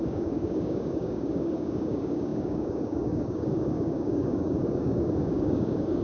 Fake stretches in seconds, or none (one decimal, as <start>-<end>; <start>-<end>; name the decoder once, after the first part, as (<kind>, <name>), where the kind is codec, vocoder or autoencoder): 0.0-6.0 (codec, DAC)